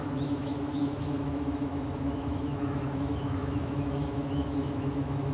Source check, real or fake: fake